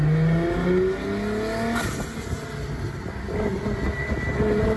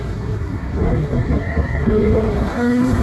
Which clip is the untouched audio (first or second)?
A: first